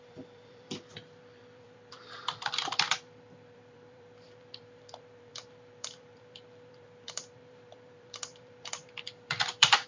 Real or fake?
fake